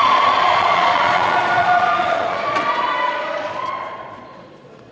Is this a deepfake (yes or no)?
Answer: yes